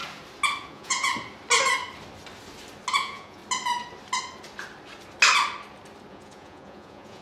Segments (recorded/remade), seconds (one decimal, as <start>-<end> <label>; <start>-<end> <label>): 0.0-0.6 recorded; 0.6-1.1 remade; 1.1-3.0 recorded; 3.0-3.4 remade; 3.4-6.1 recorded; 6.1-7.2 remade